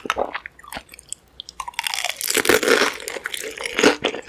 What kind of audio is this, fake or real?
real